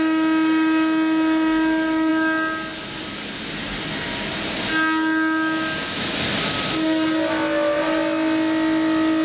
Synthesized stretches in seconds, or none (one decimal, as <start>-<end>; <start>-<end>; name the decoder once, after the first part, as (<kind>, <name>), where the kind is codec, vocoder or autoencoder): none